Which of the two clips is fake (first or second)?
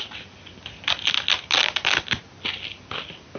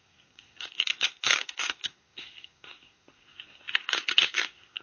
second